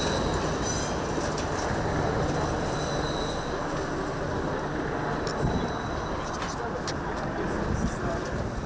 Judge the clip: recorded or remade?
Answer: recorded